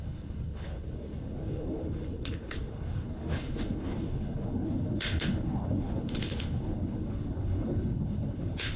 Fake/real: fake